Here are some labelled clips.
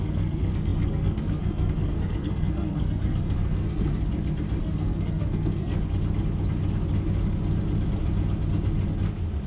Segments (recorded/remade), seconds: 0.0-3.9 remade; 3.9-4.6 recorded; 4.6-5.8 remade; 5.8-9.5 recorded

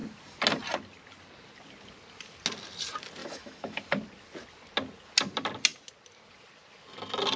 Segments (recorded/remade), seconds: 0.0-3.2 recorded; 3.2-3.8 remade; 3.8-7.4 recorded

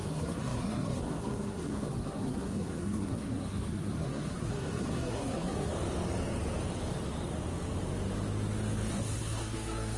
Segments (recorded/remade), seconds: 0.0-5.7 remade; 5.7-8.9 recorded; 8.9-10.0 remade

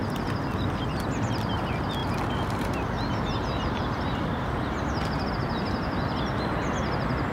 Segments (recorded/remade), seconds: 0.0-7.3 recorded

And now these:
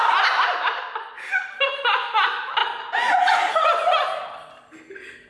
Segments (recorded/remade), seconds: 0.0-5.3 recorded